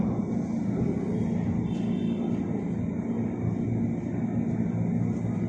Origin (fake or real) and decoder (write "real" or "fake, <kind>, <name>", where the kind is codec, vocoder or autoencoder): real